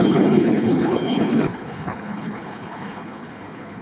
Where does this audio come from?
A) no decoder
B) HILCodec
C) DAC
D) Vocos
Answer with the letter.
B